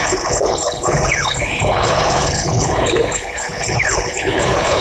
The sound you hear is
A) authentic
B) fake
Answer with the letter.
B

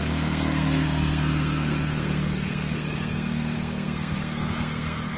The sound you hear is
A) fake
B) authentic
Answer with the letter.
A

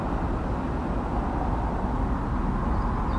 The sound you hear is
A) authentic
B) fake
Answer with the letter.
A